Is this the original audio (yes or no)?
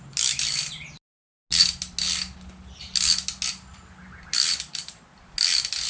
yes